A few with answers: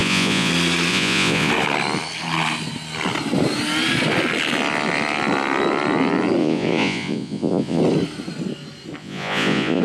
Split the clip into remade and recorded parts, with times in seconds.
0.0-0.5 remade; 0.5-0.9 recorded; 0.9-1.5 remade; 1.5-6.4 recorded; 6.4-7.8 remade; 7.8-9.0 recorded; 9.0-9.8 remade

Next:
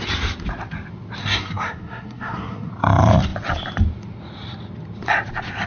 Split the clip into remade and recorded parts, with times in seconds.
0.0-1.2 recorded; 1.2-2.7 remade; 2.7-5.7 recorded

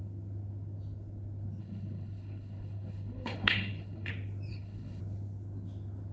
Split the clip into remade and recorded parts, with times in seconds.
0.0-1.6 recorded; 1.6-4.1 remade; 4.1-4.5 recorded; 4.5-5.0 remade; 5.0-6.1 recorded

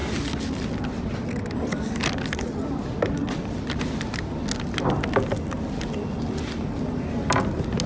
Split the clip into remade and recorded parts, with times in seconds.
0.0-7.9 recorded